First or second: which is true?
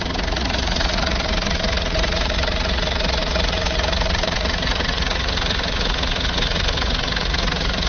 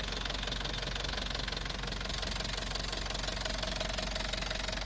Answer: second